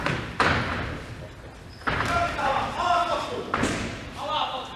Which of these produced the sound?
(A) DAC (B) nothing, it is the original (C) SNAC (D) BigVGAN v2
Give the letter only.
B